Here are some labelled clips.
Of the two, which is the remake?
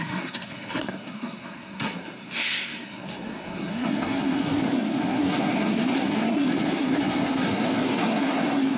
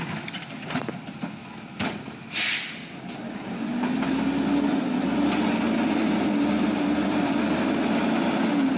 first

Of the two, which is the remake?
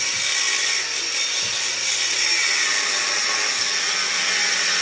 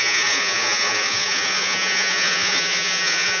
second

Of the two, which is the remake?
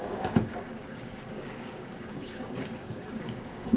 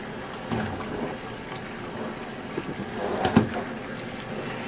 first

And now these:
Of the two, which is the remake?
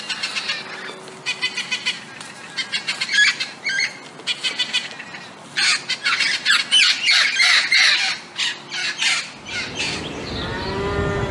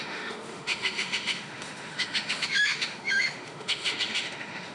second